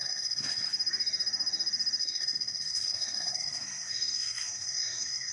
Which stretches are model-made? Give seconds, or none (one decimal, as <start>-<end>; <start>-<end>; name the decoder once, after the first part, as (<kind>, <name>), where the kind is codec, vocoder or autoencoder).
0.0-0.7 (codec, SNAC); 2.0-5.3